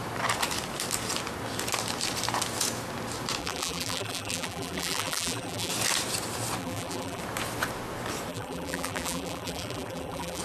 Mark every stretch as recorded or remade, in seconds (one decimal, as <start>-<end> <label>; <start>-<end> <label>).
0.0-3.4 recorded; 3.4-5.7 remade; 5.7-6.6 recorded; 6.6-7.2 remade; 7.2-8.3 recorded; 8.3-10.4 remade

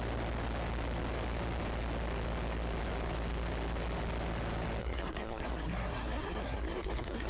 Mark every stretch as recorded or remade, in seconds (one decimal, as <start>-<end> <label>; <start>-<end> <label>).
0.0-4.8 recorded; 4.8-7.3 remade

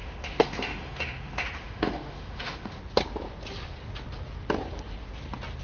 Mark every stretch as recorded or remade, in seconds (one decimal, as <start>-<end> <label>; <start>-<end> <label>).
0.0-2.8 remade; 2.8-5.6 recorded

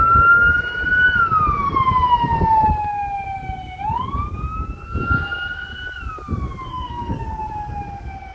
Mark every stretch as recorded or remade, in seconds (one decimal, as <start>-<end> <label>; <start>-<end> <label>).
0.0-6.7 recorded; 6.7-7.3 remade; 7.3-8.3 recorded

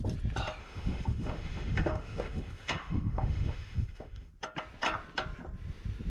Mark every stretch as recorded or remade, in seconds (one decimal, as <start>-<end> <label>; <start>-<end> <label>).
0.0-0.6 recorded; 0.6-4.3 remade; 4.3-6.1 recorded

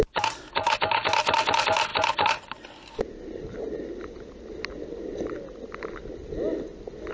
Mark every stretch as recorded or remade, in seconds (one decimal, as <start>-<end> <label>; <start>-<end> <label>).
0.0-7.1 recorded